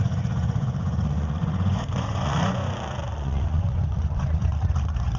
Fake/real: fake